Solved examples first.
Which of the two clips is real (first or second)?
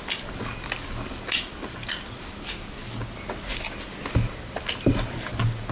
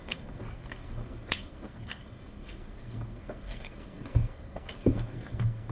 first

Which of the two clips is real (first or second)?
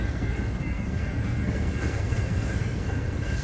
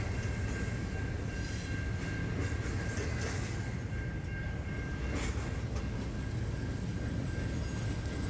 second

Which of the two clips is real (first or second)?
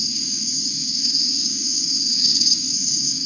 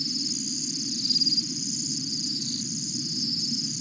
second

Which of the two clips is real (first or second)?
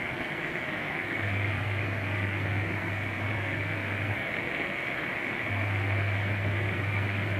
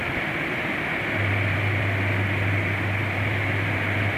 second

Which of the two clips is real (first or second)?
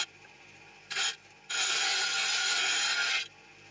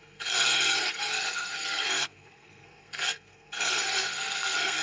first